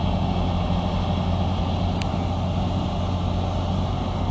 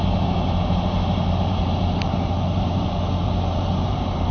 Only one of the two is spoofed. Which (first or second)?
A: second